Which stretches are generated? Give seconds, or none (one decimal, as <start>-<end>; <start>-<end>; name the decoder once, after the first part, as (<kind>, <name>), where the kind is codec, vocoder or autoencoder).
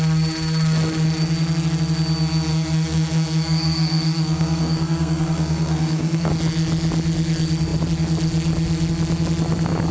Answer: 2.5-6.3 (codec, SNAC)